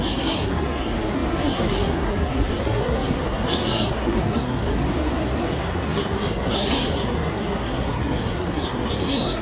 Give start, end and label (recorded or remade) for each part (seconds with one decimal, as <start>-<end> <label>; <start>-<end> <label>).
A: 0.0-9.4 remade